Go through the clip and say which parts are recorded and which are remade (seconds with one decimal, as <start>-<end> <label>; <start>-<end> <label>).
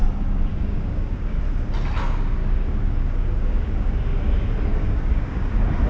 0.0-0.5 recorded; 0.5-1.4 remade; 1.4-2.4 recorded; 2.4-3.9 remade; 3.9-4.7 recorded; 4.7-5.5 remade; 5.5-5.9 recorded